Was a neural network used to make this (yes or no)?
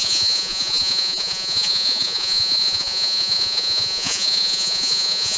yes